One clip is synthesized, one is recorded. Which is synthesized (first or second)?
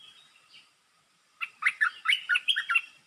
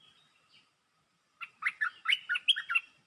first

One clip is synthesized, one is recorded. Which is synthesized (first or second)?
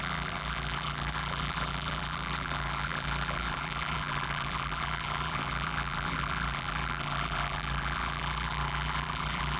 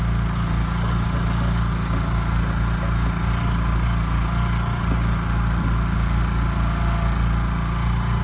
first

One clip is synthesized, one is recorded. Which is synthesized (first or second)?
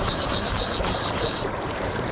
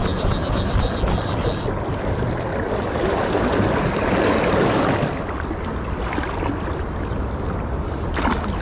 first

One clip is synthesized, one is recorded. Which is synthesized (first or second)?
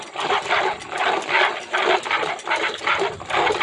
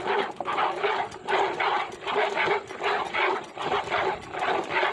first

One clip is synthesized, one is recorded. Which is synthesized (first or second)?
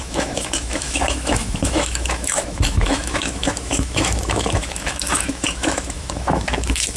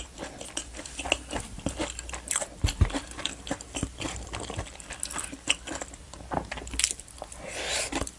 first